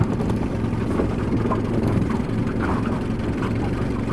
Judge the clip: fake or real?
real